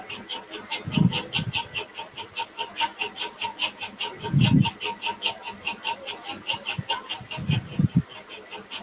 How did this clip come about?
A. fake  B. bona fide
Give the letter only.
B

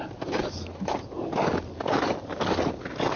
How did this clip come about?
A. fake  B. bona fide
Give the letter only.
B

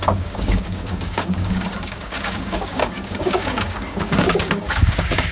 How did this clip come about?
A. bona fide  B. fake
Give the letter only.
B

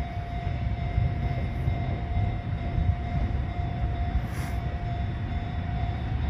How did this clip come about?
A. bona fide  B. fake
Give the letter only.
B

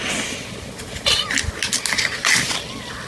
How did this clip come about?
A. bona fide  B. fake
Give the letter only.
A